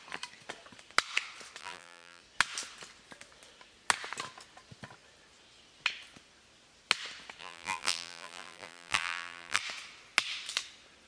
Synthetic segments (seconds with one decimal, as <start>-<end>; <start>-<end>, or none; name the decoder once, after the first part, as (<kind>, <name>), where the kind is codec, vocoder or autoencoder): 1.6-2.2 (vocoder, BigVGAN v2); 7.4-9.6

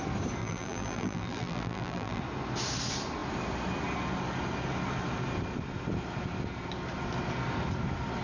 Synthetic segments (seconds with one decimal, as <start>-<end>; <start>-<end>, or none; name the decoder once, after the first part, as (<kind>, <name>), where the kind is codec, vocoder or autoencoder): 0.4-2.2 (vocoder, BigVGAN v2)

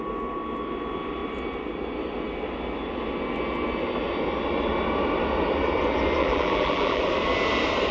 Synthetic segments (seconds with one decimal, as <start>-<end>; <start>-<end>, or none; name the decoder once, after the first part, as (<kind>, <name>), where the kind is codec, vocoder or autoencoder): 6.2-7.0 (vocoder, BigVGAN v2)

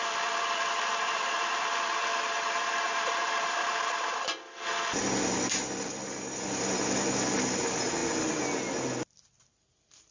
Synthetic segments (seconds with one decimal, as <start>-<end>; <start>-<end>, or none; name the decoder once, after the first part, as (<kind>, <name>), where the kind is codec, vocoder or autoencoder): 0.0-8.0 (vocoder, BigVGAN v2); 8.7-10.1

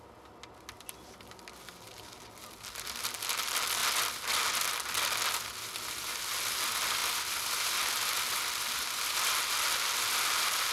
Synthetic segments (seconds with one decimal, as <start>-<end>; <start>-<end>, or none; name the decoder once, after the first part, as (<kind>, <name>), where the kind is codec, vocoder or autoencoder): none